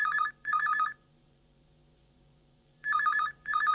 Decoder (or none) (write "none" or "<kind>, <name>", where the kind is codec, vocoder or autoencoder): vocoder, Vocos